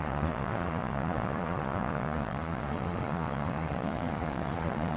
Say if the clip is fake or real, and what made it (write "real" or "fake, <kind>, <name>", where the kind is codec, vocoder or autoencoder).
fake, vocoder, Vocos